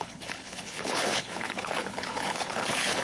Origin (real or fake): fake